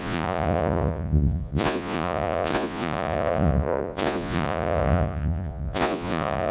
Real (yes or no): no